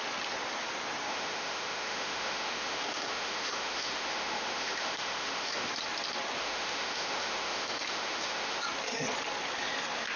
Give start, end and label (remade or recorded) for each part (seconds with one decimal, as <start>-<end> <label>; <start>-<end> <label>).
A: 0.0-1.1 recorded; 1.1-5.7 remade; 5.7-6.4 recorded; 6.4-8.6 remade; 8.6-10.2 recorded